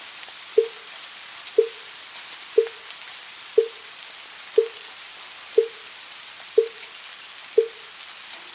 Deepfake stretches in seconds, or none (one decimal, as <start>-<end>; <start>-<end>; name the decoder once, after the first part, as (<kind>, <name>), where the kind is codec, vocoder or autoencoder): none